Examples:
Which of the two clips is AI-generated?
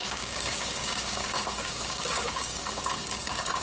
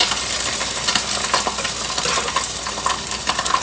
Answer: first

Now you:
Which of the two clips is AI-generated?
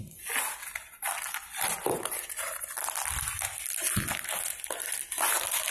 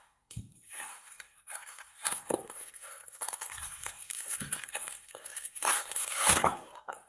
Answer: second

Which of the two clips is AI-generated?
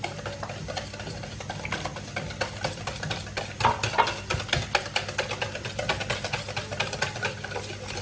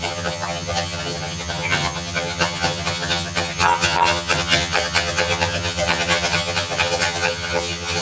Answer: second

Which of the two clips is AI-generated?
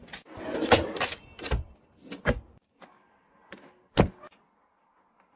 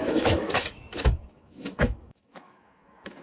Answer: second